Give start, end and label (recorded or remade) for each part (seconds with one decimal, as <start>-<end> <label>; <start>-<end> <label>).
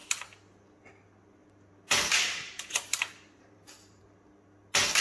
0.0-1.4 recorded; 1.4-4.0 remade; 4.0-5.0 recorded